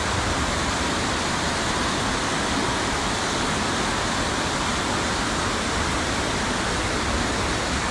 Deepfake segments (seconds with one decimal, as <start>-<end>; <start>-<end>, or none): none